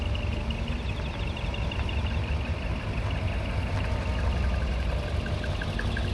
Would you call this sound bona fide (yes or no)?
yes